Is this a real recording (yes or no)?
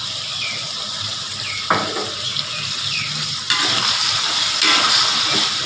no